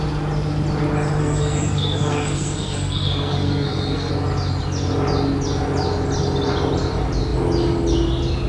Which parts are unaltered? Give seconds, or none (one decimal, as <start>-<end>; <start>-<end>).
0.0-1.2; 4.1-8.5

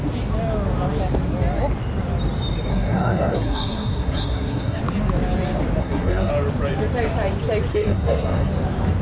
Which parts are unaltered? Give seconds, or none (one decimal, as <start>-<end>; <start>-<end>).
0.0-2.7; 4.8-5.8; 6.3-7.7; 8.5-9.0

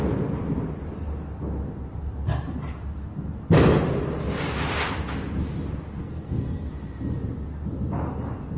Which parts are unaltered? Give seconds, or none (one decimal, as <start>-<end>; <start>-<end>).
0.0-6.0; 6.7-8.6

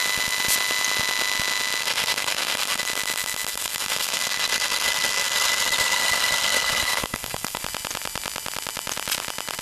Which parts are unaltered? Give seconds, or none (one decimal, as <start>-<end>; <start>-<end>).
0.0-1.8; 2.8-3.5; 7.6-9.6

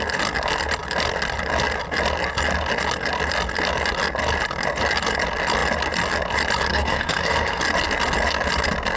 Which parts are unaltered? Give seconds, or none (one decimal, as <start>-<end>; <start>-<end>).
0.0-6.7; 7.6-9.0